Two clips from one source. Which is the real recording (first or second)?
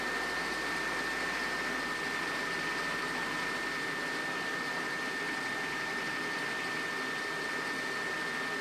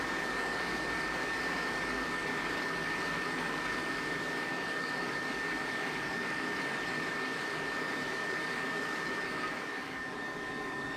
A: first